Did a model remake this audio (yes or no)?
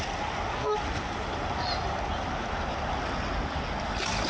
no